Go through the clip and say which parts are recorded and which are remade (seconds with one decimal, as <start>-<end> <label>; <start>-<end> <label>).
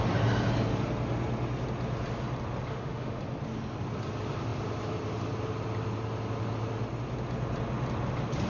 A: 0.0-2.7 recorded; 2.7-3.2 remade; 3.2-8.5 recorded